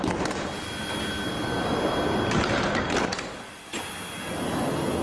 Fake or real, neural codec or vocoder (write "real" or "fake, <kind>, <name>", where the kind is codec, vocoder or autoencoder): real